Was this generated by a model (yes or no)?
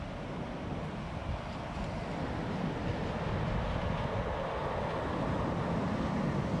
no